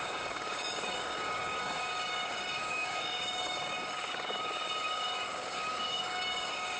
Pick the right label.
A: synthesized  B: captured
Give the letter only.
A